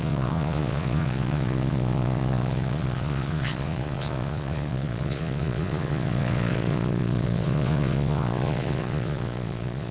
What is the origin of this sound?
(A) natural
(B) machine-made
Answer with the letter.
B